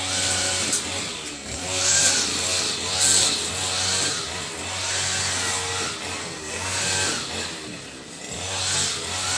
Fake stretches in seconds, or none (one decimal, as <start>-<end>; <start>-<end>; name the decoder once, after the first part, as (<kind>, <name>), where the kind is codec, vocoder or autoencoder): 1.3-1.8 (codec, SNAC); 6.2-6.8